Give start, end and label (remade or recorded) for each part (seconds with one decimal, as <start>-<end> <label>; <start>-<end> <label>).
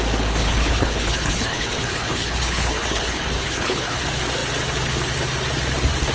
0.0-0.4 recorded; 0.4-4.0 remade; 4.0-6.1 recorded